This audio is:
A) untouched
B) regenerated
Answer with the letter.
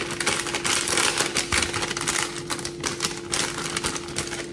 A